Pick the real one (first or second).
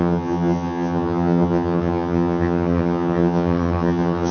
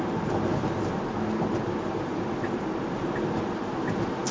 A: second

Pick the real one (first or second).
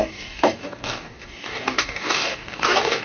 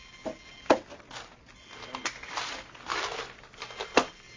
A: second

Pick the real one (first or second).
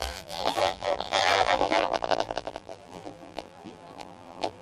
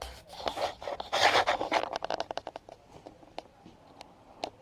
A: second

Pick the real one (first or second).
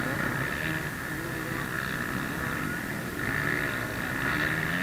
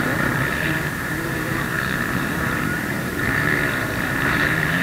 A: first